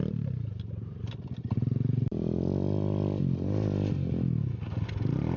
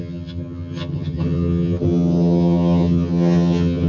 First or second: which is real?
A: first